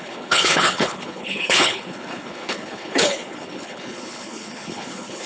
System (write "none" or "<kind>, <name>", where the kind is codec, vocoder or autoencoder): codec, HILCodec